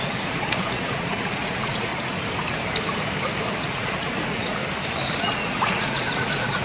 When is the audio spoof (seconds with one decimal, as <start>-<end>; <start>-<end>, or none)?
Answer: 0.0-1.9; 3.6-4.6; 5.2-6.6